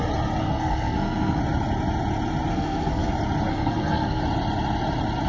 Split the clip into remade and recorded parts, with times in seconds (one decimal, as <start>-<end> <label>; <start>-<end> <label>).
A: 0.0-0.4 recorded; 0.4-1.4 remade; 1.4-2.5 recorded; 2.5-3.1 remade; 3.1-3.5 recorded; 3.5-4.2 remade; 4.2-5.3 recorded